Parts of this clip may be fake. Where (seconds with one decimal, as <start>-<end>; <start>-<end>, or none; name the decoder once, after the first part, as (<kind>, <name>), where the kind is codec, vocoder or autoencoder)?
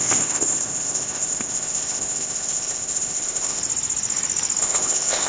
0.0-3.6 (codec, ZipCodec); 4.6-5.3